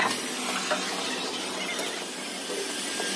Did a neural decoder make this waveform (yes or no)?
no